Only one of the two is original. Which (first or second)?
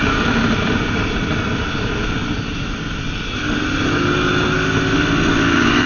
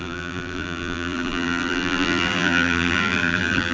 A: first